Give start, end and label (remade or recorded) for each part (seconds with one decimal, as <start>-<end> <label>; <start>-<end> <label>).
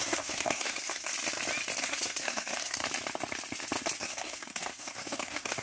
0.0-1.1 remade; 1.1-1.8 recorded; 1.8-2.8 remade; 2.8-4.0 recorded; 4.0-5.6 remade